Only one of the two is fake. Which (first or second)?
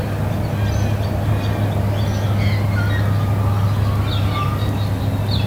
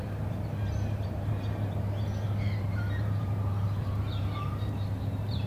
second